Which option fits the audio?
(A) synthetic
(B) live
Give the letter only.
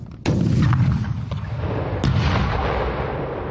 B